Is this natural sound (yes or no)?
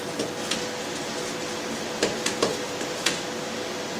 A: yes